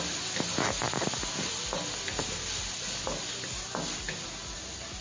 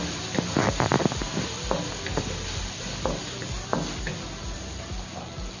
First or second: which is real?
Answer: first